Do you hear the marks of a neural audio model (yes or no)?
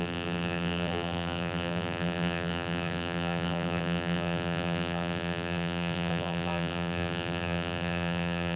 yes